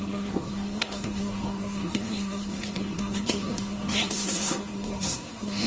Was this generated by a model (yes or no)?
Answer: yes